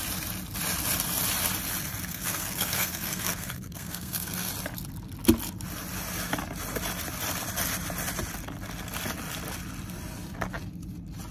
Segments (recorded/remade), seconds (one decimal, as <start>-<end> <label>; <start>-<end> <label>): 0.0-2.1 recorded; 2.1-4.5 remade; 4.5-11.3 recorded